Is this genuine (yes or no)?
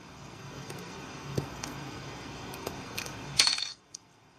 no